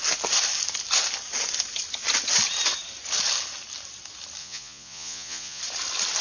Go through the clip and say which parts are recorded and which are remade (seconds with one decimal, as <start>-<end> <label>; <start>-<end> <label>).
0.0-4.4 recorded; 4.4-5.6 remade; 5.6-6.2 recorded